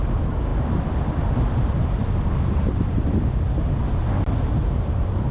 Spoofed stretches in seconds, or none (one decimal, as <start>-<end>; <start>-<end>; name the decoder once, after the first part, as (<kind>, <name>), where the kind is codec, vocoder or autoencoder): 0.5-3.3 (vocoder, BigVGAN v2); 4.6-5.3